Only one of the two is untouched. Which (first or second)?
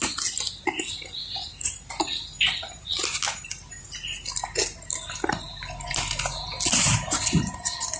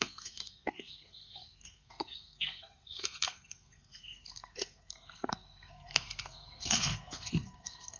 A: first